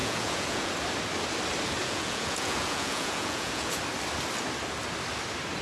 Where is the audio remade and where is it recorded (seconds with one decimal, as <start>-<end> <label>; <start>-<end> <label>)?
0.0-0.7 remade; 0.7-1.8 recorded; 1.8-3.8 remade; 3.8-5.6 recorded